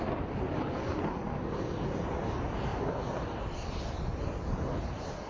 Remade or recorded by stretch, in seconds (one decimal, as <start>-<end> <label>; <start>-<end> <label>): 0.0-5.3 recorded